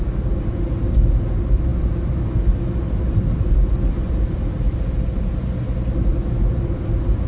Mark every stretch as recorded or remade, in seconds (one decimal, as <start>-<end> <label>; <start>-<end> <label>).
0.0-7.3 recorded